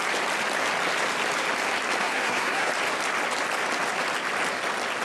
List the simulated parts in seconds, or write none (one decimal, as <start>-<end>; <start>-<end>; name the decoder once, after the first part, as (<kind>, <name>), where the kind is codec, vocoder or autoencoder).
2.0-2.7 (codec, SNAC)